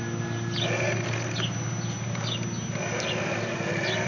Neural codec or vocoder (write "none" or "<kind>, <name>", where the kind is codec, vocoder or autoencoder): none